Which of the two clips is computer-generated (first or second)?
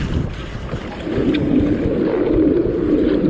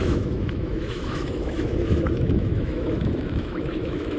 second